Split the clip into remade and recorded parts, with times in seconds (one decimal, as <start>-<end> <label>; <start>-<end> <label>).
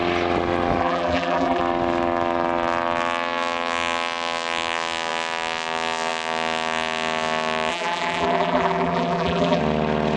0.0-0.8 recorded; 0.8-1.6 remade; 1.6-7.7 recorded; 7.7-9.6 remade; 9.6-10.2 recorded